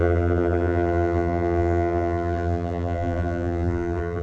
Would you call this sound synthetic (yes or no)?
yes